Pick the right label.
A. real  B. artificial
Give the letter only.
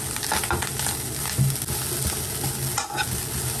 A